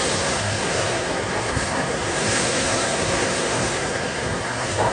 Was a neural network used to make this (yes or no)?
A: yes